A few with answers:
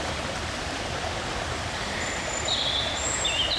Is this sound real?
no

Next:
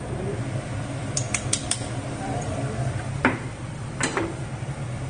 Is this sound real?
no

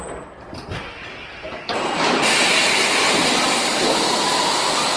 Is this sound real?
no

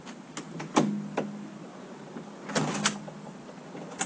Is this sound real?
yes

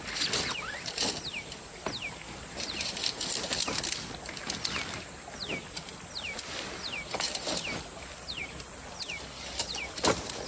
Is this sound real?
yes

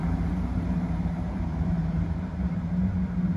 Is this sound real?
no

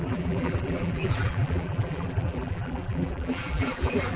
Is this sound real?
no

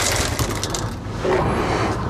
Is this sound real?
yes